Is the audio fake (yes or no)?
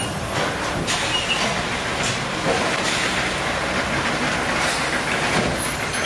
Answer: no